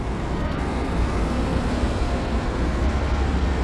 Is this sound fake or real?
fake